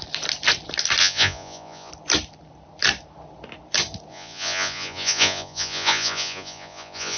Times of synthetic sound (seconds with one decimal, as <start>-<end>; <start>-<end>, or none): 1.0-1.9; 4.1-7.2